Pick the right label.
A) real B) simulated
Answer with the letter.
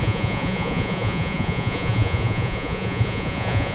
B